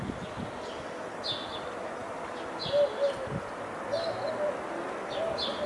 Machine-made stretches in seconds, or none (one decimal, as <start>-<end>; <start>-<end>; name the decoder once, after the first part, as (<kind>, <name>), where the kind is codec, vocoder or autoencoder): none